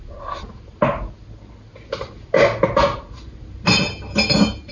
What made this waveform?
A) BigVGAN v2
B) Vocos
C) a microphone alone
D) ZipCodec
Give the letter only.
C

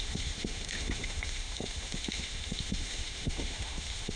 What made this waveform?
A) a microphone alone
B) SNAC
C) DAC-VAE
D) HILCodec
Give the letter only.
C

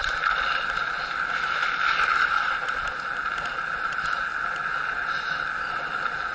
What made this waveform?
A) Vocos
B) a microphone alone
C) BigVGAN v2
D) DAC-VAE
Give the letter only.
B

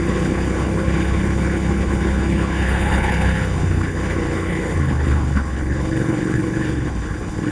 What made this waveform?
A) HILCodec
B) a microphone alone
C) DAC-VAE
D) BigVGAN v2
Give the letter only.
A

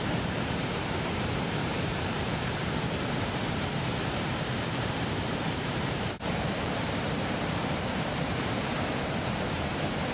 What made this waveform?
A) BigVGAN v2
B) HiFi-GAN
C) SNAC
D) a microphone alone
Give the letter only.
A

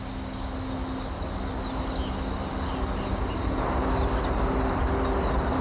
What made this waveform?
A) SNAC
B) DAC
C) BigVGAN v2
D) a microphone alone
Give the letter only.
D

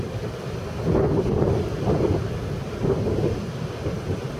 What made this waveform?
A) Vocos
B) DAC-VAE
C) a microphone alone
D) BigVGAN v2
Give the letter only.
C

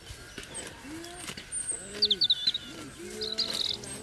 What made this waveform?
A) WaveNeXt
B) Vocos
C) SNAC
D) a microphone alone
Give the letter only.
D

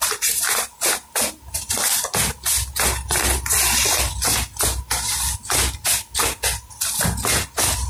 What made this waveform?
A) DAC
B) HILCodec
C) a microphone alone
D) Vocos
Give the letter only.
C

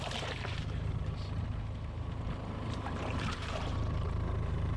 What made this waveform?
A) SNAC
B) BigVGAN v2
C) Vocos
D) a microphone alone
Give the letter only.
B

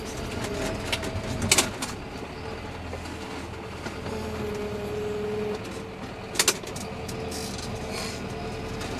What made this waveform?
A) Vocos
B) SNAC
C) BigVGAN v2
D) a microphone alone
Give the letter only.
D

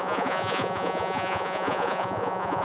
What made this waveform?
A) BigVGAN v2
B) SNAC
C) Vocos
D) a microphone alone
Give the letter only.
C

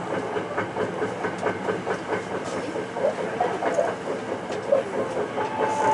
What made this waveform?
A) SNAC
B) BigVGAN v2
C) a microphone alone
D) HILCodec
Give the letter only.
C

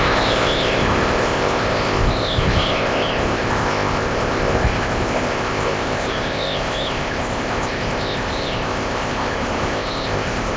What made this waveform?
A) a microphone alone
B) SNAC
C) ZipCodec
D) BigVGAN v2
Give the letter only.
C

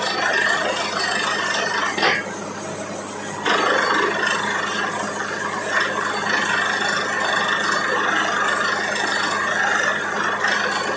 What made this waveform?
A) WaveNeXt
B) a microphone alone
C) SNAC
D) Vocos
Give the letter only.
B